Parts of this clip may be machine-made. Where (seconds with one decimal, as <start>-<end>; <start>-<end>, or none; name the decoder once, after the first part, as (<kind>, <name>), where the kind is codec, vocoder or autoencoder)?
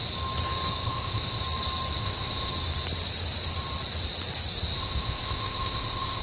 0.7-1.4 (codec, ZipCodec); 2.0-2.5; 4.8-6.2